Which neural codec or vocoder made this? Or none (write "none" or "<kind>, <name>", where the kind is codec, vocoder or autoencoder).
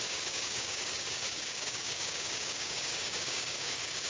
codec, DAC